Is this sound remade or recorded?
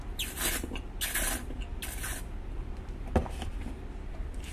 recorded